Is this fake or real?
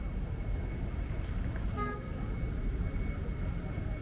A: real